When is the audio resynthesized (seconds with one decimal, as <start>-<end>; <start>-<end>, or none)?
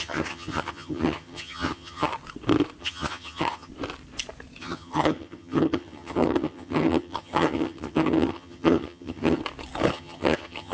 0.0-2.1; 2.8-3.7; 4.6-9.4; 9.9-10.7